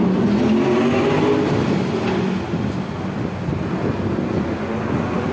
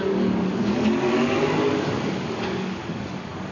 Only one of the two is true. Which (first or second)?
first